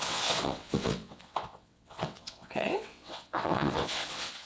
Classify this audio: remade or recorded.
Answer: remade